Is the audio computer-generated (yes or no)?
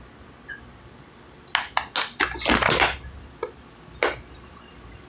no